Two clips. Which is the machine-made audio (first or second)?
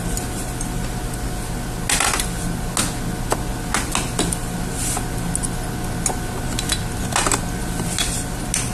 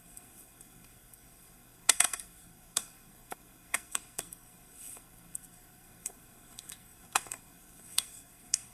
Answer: second